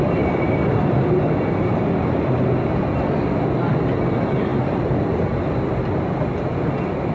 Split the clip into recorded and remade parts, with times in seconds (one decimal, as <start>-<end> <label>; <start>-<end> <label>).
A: 0.0-4.5 recorded; 4.5-6.2 remade; 6.2-7.1 recorded